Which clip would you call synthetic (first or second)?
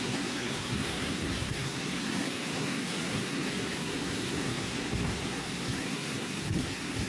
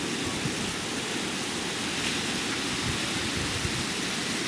first